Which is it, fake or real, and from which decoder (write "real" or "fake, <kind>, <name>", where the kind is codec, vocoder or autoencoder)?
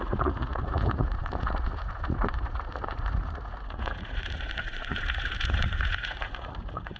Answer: fake, vocoder, Vocos